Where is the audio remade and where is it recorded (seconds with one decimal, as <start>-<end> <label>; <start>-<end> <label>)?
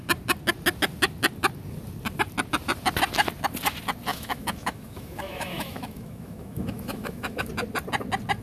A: 0.0-4.1 recorded; 4.1-7.5 remade; 7.5-8.4 recorded